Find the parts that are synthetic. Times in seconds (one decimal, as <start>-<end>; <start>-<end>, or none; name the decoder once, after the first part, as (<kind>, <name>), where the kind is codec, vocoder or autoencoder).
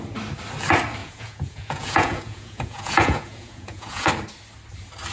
1.0-4.1 (vocoder, Vocos)